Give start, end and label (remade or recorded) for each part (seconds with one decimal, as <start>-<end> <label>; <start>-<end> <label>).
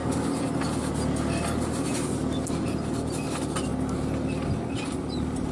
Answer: 0.0-5.5 recorded